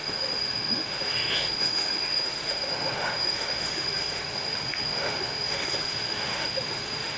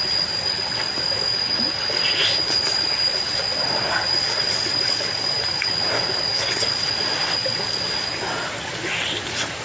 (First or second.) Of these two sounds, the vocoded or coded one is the first